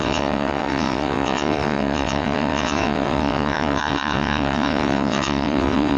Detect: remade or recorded remade